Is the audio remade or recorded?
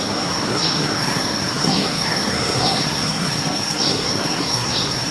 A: remade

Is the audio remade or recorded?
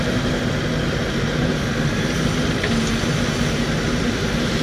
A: recorded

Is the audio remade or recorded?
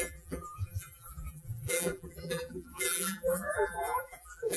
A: remade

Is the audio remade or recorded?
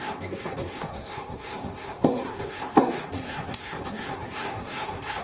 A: remade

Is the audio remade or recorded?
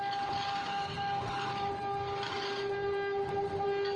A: recorded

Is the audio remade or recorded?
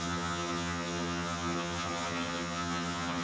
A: remade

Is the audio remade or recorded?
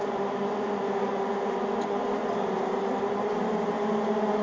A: recorded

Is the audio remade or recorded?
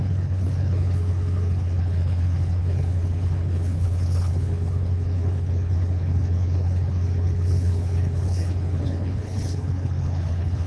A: remade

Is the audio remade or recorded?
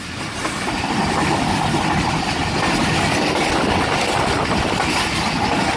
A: recorded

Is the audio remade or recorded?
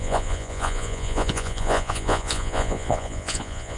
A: remade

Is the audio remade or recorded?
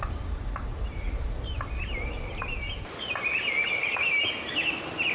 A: recorded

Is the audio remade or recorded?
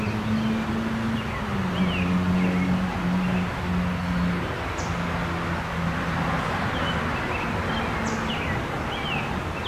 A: recorded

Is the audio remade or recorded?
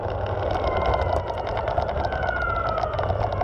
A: recorded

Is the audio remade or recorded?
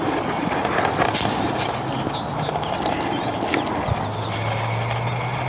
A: recorded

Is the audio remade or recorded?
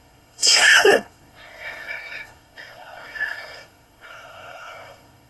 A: remade